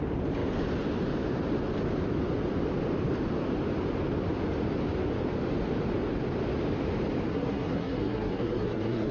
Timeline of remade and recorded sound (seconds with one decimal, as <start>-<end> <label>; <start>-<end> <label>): 0.0-7.3 recorded; 7.3-9.1 remade